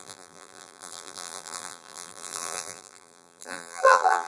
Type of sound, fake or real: fake